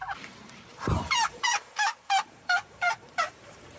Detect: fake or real fake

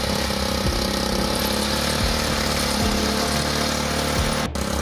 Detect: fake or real real